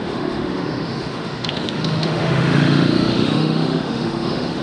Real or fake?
fake